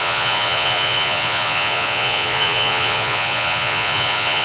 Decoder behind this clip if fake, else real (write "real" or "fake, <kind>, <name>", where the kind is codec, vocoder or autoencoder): fake, vocoder, Vocos